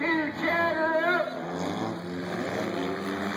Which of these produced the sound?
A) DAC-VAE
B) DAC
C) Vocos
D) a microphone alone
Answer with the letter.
D